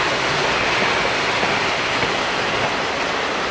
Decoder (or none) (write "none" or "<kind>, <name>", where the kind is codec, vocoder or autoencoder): none